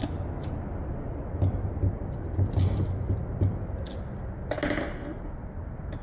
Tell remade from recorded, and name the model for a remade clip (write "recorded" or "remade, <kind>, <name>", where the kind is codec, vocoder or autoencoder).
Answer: recorded